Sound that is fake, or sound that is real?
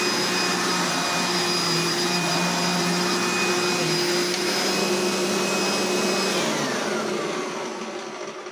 real